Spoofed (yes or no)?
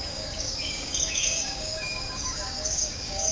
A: yes